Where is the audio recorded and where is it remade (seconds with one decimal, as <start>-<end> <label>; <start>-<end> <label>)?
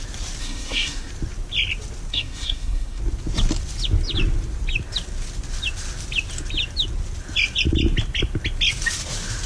0.0-0.4 recorded; 0.4-1.1 remade; 1.1-2.1 recorded; 2.1-3.0 remade; 3.0-9.5 recorded